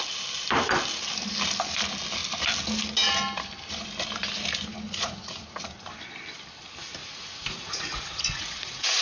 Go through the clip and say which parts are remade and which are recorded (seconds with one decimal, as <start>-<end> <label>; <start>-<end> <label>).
0.0-4.7 recorded; 4.7-5.6 remade; 5.6-7.0 recorded; 7.0-9.0 remade

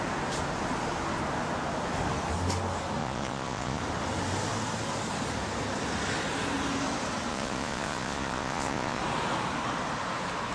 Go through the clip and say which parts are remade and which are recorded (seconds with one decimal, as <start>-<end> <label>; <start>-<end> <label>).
0.0-3.0 recorded; 3.0-3.8 remade; 3.8-7.3 recorded; 7.3-9.0 remade; 9.0-10.5 recorded

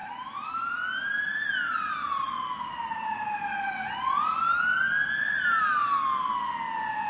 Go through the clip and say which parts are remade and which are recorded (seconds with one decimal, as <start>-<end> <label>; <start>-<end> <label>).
0.0-7.1 recorded

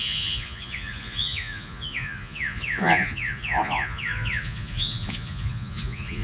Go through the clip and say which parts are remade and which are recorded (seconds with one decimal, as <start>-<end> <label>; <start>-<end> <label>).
0.0-6.2 remade

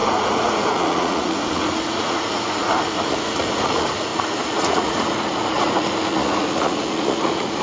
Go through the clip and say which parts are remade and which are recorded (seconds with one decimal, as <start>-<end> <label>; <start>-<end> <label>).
0.0-7.6 remade

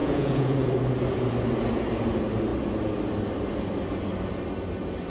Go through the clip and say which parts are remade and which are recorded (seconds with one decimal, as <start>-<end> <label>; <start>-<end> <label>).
0.0-0.7 remade; 0.7-5.1 recorded

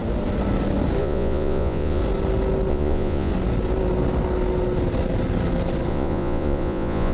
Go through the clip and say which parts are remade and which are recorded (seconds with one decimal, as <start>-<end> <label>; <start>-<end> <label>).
0.0-1.0 recorded; 1.0-2.0 remade; 2.0-2.7 recorded; 2.7-3.3 remade; 3.3-5.9 recorded; 5.9-7.1 remade

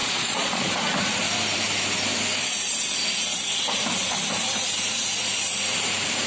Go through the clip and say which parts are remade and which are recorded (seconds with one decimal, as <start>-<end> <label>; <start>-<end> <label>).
0.0-0.7 remade; 0.7-6.3 recorded